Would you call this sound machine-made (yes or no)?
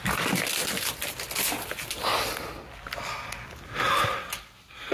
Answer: no